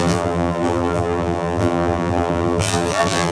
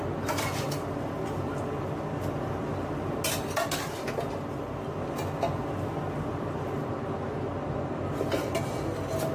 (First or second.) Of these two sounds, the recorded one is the second